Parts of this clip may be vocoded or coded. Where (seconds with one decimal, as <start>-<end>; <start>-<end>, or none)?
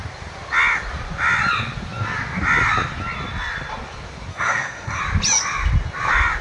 4.3-5.0